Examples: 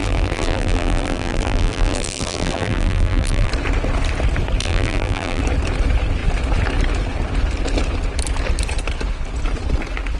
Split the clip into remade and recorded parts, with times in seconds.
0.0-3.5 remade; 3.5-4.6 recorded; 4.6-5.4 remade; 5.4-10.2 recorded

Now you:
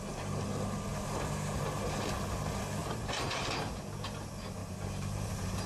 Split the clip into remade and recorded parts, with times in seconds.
0.0-2.8 recorded; 2.8-3.8 remade; 3.8-4.6 recorded; 4.6-5.3 remade; 5.3-5.7 recorded

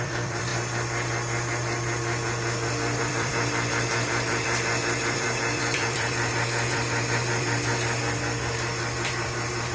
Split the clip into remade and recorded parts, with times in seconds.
0.0-0.5 remade; 0.5-3.0 recorded; 3.0-9.7 remade

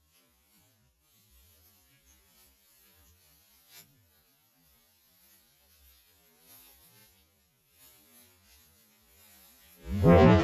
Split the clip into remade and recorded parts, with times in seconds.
0.0-10.4 recorded

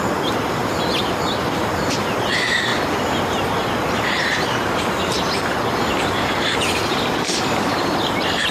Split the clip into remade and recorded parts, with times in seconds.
0.0-0.6 remade; 0.6-1.1 recorded; 1.1-2.7 remade; 2.7-4.2 recorded; 4.2-8.5 remade